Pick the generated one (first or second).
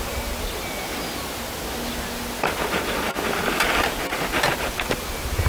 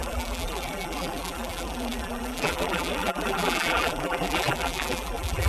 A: second